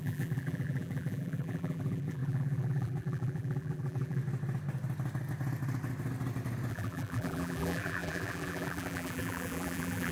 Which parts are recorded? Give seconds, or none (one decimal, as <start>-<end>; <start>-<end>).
4.2-6.7